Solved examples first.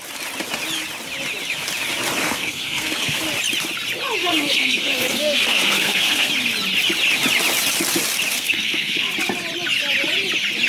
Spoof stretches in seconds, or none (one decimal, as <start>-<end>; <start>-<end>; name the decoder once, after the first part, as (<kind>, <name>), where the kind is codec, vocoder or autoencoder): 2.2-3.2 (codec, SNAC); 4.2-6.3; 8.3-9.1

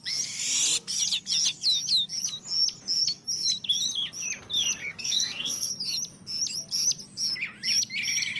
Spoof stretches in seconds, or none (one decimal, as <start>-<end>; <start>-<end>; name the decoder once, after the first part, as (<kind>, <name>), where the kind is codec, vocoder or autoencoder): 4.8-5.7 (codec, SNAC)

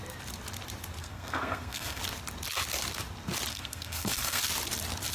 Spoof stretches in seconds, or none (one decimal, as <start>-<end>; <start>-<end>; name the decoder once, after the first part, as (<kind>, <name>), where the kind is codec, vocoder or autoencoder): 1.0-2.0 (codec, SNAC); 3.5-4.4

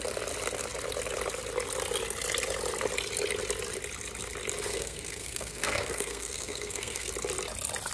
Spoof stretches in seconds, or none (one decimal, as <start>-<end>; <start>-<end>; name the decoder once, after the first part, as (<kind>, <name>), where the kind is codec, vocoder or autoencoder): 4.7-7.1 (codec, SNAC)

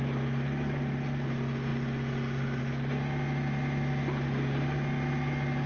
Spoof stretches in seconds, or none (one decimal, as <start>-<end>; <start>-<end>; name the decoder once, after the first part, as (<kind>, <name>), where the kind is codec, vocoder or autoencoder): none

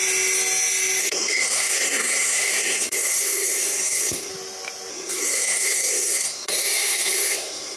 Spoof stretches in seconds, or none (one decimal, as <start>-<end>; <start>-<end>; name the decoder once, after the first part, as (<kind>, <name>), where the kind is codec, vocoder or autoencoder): 1.0-4.3 (codec, SNAC); 4.9-7.8